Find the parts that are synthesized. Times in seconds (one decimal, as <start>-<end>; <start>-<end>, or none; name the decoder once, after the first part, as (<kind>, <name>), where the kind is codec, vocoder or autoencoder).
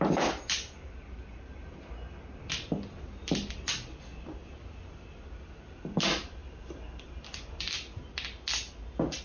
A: none